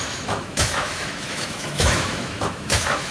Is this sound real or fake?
fake